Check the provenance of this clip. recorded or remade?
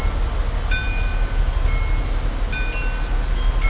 recorded